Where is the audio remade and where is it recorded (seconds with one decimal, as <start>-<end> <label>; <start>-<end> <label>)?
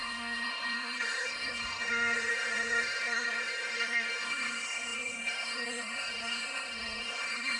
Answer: 0.0-7.6 remade